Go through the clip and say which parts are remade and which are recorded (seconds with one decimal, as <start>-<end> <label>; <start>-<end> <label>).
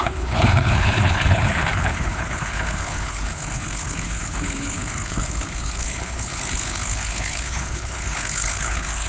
0.0-9.1 remade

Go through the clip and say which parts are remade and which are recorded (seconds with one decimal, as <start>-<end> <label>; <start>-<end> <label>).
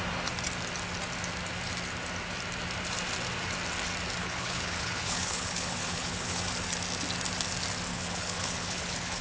0.0-4.2 recorded; 4.2-6.4 remade; 6.4-7.9 recorded; 7.9-9.2 remade